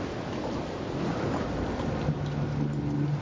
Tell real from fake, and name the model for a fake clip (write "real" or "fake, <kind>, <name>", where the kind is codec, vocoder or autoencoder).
real